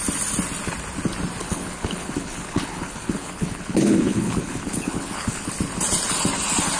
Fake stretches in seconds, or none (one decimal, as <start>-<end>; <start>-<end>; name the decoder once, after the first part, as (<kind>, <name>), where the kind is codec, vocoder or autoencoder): 1.4-5.5 (codec, HILCodec)